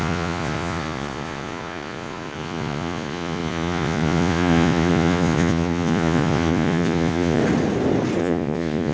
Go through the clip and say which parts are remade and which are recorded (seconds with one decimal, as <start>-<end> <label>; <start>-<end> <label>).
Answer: 0.0-7.4 remade; 7.4-8.2 recorded; 8.2-8.9 remade